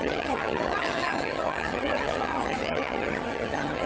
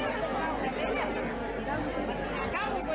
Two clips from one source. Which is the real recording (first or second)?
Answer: second